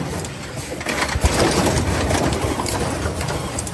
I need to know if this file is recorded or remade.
remade